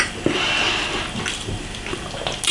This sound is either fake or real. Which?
real